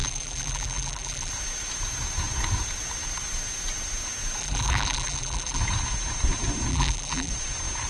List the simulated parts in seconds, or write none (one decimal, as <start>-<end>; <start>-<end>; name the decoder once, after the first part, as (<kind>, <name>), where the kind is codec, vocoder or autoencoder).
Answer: 0.0-1.3 (vocoder, BigVGAN v2); 4.4-5.6; 6.7-7.3